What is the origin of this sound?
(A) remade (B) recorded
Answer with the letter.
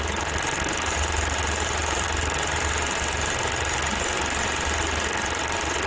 B